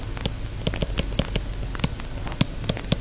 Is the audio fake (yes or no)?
no